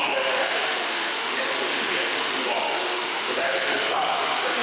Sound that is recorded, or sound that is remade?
remade